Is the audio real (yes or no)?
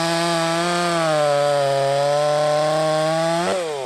yes